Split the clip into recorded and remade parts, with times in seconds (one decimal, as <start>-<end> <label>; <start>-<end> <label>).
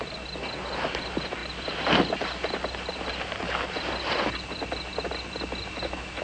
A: 0.0-6.2 recorded